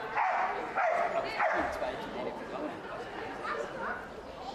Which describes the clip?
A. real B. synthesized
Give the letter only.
A